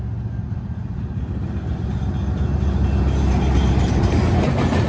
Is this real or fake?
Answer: real